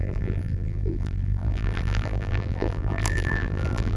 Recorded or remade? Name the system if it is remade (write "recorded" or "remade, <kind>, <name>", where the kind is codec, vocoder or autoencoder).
remade, vocoder, BigVGAN v2